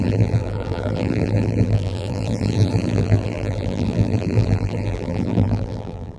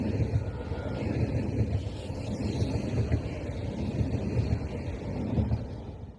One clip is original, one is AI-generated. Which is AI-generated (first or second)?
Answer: first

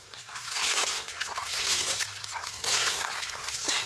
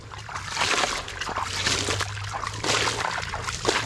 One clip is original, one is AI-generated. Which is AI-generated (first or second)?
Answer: first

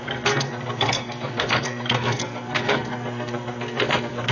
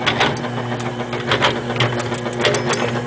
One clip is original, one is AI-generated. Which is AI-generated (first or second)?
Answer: first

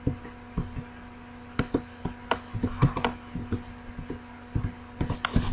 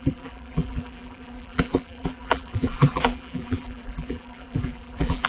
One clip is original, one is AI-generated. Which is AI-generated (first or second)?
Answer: second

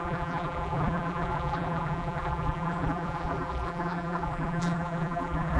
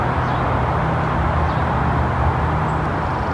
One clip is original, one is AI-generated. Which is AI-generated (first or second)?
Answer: first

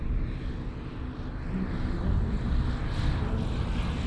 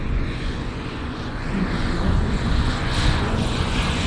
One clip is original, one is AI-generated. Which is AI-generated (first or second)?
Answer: second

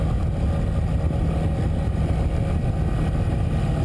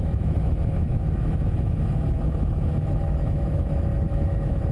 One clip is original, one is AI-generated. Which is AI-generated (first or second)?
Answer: second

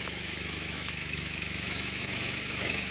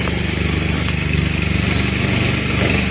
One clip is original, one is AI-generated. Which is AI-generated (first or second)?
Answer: first